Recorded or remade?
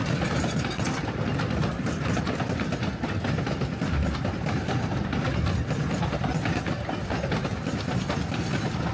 recorded